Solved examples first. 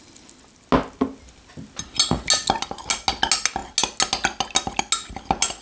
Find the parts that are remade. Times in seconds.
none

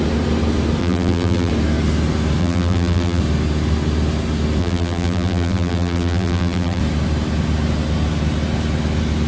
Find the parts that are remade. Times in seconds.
0.8-1.5 (vocoder, BigVGAN v2); 2.4-3.2; 4.6-6.8